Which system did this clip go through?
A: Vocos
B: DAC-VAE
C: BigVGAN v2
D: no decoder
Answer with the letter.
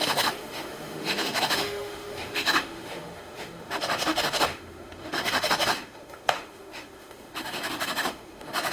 B